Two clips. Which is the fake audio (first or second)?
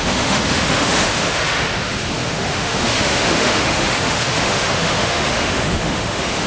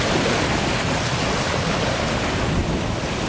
first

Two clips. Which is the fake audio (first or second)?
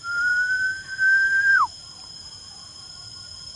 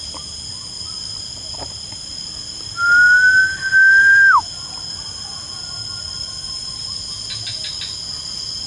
first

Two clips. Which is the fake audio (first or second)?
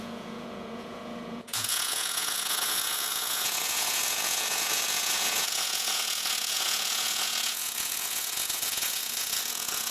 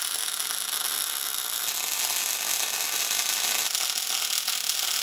first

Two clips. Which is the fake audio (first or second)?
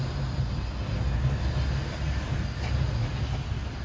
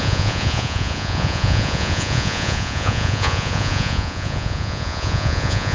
second